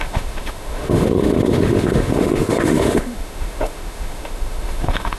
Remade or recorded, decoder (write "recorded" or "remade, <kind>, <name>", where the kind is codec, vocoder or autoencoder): remade, autoencoder, DAC-VAE